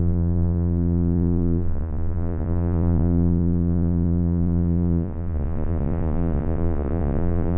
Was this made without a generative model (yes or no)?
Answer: no